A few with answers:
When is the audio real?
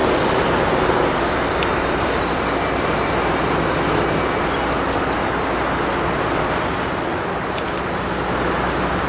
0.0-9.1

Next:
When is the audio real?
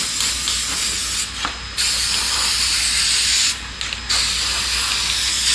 0.0-5.5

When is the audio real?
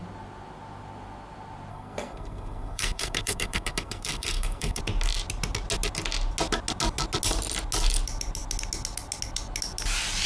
0.0-1.7; 4.8-10.3